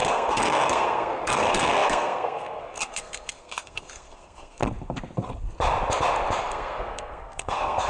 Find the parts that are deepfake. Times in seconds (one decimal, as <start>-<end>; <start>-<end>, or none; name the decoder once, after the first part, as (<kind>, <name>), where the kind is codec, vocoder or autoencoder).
0.0-4.6 (codec, SNAC); 6.4-7.9